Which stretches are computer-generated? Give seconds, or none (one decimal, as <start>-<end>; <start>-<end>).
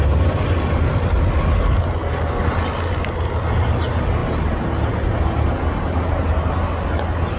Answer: none